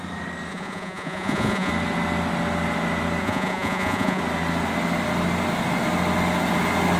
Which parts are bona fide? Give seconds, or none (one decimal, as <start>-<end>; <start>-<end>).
0.0-0.5; 1.7-3.2; 4.2-7.0